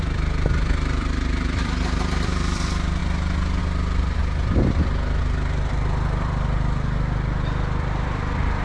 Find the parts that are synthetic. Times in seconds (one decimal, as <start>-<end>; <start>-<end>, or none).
0.0-3.0; 3.6-4.2; 5.2-8.6